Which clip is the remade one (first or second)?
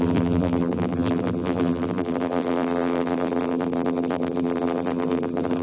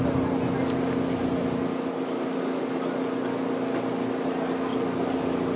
first